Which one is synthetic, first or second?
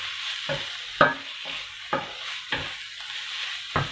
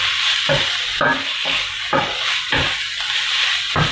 second